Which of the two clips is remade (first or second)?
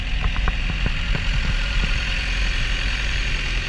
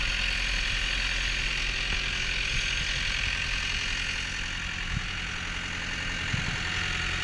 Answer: first